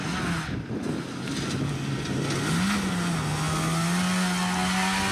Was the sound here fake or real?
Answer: real